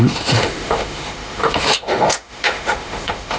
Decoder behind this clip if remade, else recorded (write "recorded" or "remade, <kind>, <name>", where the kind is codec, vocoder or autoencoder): remade, autoencoder, DAC-VAE